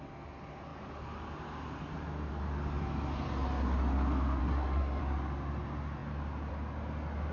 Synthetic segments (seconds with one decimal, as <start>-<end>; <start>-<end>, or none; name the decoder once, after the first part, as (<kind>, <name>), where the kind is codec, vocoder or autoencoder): 4.4-5.0 (codec, SNAC)

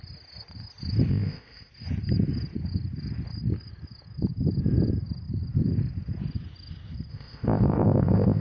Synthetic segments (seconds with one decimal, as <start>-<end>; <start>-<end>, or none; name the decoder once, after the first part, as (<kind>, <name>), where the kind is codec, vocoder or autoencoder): 1.1-1.7 (codec, ZipCodec); 7.1-8.4

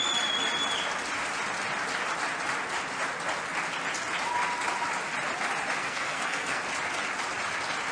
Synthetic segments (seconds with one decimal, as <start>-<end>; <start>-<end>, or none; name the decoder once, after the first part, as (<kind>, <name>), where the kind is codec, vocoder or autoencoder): 5.8-6.6 (codec, SNAC)

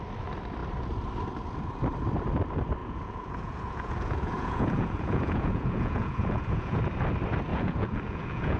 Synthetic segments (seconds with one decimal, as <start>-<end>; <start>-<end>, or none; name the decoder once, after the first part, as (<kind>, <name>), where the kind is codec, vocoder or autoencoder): 2.8-6.8 (vocoder, Vocos); 7.5-8.6

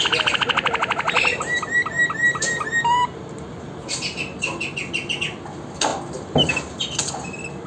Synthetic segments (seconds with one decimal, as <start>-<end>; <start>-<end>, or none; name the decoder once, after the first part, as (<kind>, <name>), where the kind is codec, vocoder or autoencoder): none

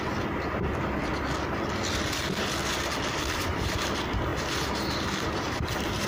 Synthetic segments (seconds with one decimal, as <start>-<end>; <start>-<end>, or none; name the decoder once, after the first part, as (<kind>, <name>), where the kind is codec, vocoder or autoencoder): 0.0-1.1 (vocoder, BigVGAN v2); 3.5-4.3; 4.9-6.1

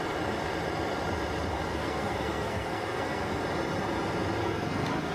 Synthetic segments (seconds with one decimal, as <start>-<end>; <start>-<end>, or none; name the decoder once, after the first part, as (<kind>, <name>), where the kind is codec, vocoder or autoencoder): 1.7-3.4 (codec, SNAC); 4.4-5.1